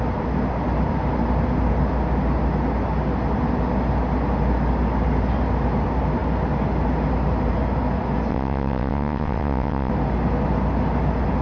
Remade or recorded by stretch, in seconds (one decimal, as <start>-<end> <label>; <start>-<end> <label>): 0.0-8.3 recorded; 8.3-9.9 remade; 9.9-11.4 recorded